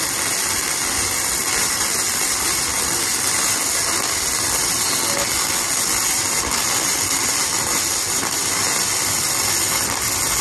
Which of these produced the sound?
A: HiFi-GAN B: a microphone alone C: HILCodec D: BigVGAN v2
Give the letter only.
B